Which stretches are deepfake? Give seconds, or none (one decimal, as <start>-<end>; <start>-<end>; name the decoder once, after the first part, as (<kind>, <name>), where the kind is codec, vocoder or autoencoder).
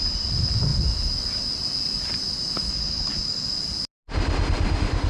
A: none